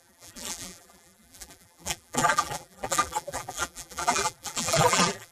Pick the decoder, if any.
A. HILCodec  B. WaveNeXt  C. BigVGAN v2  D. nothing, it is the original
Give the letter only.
C